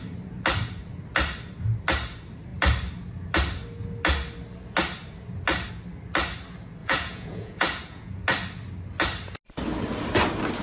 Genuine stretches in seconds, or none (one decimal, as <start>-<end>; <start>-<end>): 0.0-6.8; 8.2-10.6